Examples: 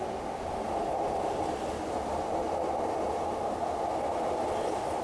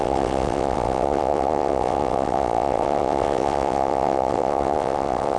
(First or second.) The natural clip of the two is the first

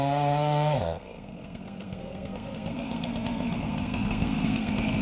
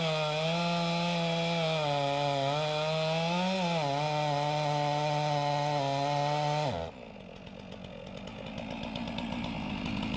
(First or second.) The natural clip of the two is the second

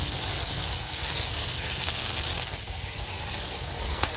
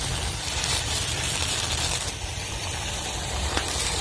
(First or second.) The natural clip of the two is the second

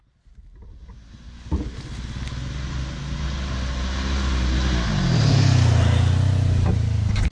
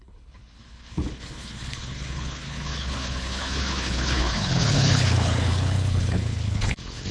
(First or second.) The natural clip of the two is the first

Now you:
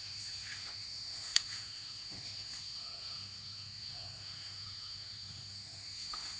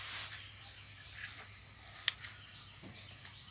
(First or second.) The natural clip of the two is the second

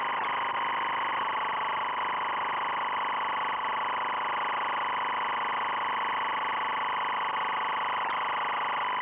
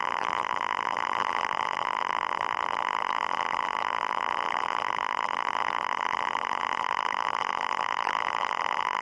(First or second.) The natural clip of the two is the first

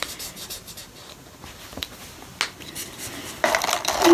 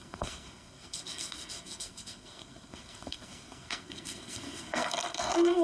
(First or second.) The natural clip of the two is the first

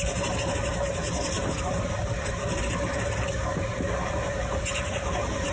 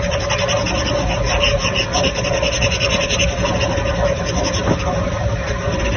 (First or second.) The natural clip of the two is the second